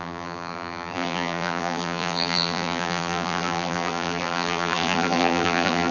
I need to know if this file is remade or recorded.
remade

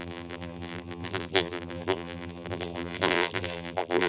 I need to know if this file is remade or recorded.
remade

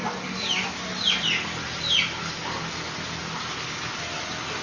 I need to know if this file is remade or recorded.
recorded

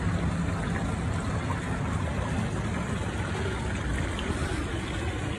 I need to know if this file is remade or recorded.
recorded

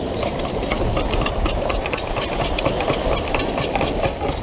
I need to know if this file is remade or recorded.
recorded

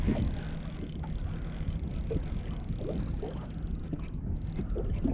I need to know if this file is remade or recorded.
recorded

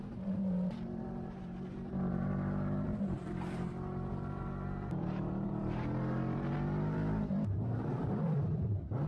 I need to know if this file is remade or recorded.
remade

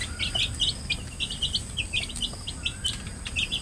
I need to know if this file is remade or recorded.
recorded